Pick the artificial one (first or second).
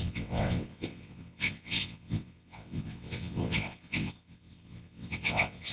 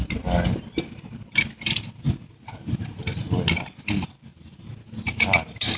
first